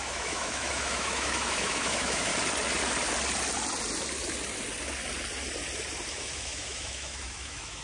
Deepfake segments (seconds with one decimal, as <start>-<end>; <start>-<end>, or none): 0.0-2.3; 6.1-7.8